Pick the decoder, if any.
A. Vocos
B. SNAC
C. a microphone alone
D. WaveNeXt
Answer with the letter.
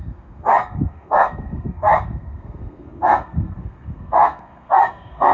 B